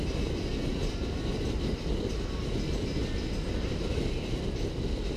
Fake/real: real